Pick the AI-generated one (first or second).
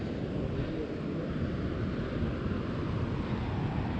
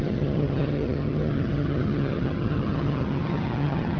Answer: second